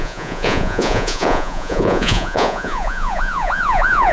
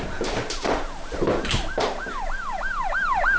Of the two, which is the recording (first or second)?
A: second